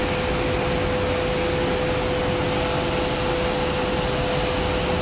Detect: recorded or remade recorded